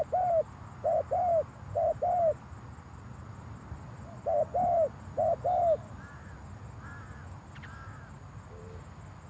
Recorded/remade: recorded